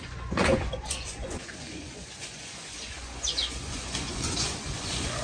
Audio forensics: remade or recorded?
remade